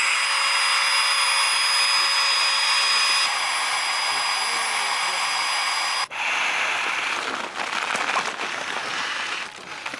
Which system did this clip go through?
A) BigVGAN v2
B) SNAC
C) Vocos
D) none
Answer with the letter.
D